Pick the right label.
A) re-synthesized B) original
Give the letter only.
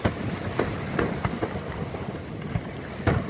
B